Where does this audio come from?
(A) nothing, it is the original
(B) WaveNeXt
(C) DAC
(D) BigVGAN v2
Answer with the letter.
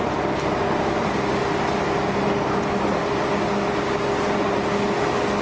A